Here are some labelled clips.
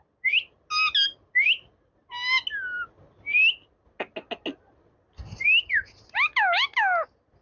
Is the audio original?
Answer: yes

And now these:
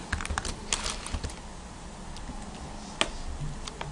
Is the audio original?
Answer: yes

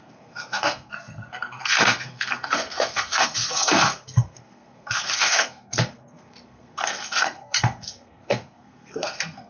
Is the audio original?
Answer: no